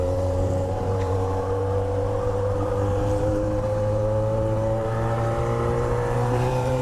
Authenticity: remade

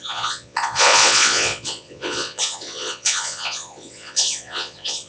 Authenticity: remade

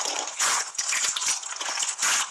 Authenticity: remade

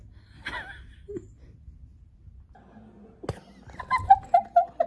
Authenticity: recorded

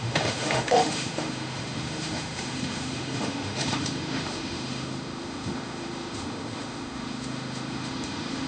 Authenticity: remade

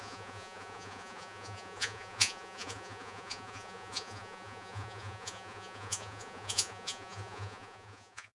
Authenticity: remade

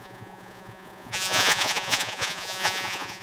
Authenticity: remade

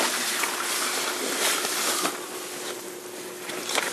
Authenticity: recorded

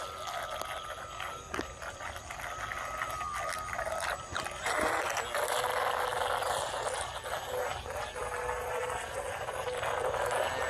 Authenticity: recorded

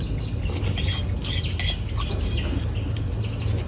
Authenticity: recorded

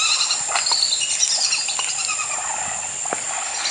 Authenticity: recorded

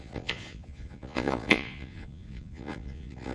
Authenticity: remade